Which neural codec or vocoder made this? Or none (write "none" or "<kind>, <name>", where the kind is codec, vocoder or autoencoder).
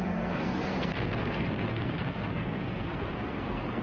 codec, SNAC